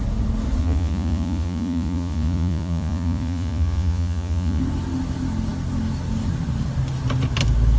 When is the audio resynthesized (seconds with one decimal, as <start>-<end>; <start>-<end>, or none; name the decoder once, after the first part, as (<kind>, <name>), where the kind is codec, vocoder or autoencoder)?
0.6-4.6 (vocoder, Vocos)